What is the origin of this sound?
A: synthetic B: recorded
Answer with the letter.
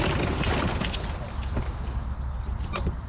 B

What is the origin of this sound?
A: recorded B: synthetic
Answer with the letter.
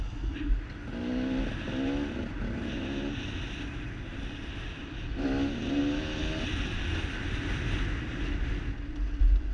A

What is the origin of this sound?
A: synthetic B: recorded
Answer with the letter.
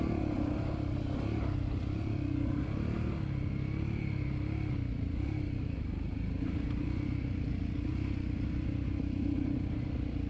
B